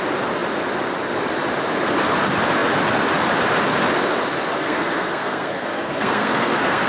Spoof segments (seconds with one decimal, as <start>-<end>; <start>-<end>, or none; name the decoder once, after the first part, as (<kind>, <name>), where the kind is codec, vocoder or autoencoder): 4.5-6.9 (codec, SNAC)